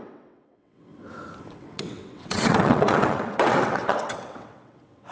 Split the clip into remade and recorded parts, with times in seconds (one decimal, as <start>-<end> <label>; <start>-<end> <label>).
0.0-0.9 remade; 0.9-1.5 recorded; 1.5-5.1 remade